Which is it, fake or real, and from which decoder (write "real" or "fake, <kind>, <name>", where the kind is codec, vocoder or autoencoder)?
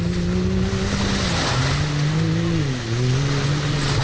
real